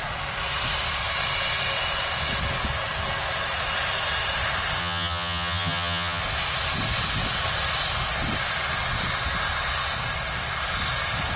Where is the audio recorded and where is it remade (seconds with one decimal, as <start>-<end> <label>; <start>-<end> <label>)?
0.0-4.8 recorded; 4.8-6.2 remade; 6.2-11.4 recorded